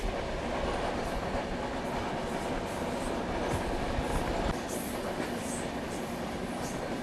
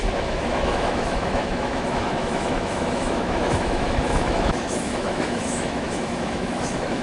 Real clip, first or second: first